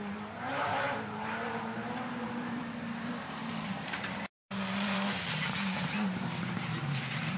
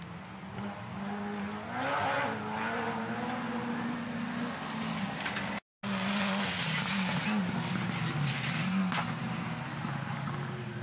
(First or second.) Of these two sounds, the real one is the second